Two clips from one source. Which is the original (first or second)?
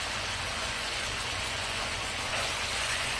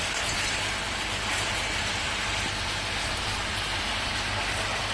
second